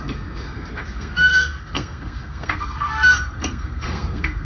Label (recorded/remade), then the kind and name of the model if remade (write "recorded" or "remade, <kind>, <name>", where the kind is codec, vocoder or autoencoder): remade, codec, SNAC